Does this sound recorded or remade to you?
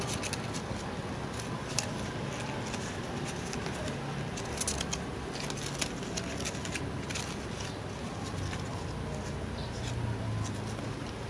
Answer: recorded